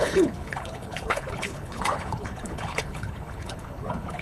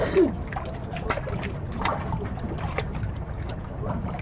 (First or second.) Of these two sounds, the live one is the second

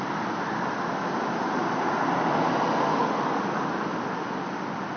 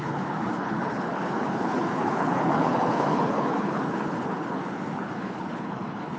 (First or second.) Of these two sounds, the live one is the first